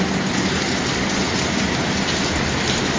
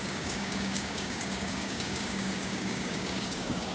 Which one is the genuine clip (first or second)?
first